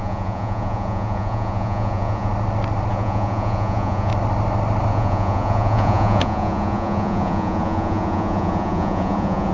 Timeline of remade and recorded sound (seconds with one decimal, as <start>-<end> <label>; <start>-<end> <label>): 0.0-2.3 remade; 2.3-2.9 recorded; 2.9-4.1 remade; 4.1-4.9 recorded; 4.9-9.5 remade